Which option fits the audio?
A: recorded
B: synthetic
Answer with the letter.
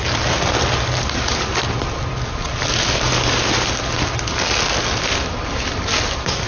A